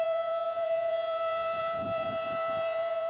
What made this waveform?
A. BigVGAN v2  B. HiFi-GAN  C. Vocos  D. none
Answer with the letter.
C